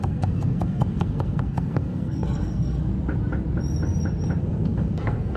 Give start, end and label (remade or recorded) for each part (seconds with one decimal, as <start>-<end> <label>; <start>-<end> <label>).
0.0-2.9 remade; 2.9-4.4 recorded; 4.4-5.4 remade